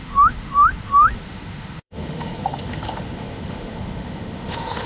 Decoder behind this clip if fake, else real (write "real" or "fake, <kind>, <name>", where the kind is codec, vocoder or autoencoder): fake, autoencoder, DAC-VAE